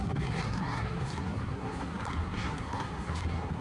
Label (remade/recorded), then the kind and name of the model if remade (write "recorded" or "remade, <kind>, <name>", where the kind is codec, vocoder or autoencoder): remade, codec, SNAC